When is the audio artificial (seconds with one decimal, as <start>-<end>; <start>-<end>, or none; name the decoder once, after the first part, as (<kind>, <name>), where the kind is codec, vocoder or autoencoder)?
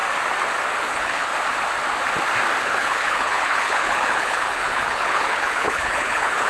0.8-1.3 (codec, HILCodec); 2.6-6.5